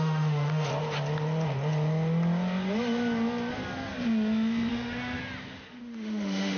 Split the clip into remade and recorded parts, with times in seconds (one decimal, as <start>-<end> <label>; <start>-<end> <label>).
0.0-0.7 remade; 0.7-4.7 recorded; 4.7-5.2 remade; 5.2-5.8 recorded; 5.8-6.6 remade